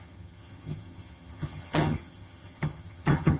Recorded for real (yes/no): no